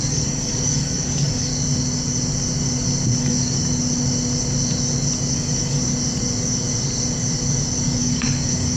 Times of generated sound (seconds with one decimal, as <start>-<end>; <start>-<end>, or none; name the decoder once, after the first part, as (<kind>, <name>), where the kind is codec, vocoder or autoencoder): 0.0-1.5 (codec, DAC); 3.2-3.6; 5.3-5.8; 8.0-8.8